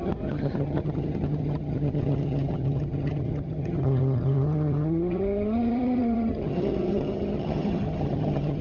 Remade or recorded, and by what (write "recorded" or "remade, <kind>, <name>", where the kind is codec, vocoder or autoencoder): remade, vocoder, HiFi-GAN